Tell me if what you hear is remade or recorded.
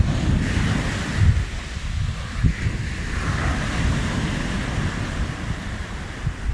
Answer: recorded